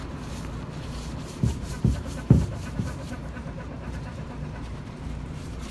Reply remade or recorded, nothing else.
remade